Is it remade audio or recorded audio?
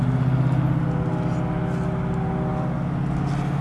recorded